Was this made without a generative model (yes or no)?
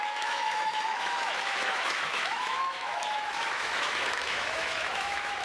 no